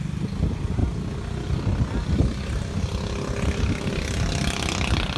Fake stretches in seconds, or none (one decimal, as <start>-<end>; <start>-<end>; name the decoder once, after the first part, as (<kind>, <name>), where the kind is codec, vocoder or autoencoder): none